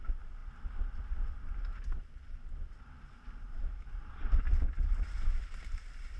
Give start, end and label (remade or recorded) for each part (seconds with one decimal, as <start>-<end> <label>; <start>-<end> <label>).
0.0-6.2 recorded